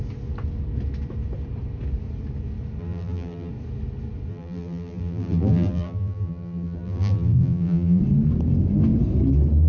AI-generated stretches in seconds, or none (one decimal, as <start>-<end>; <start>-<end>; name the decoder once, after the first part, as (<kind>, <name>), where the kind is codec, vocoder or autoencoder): 2.8-3.5 (vocoder, BigVGAN v2); 4.3-8.0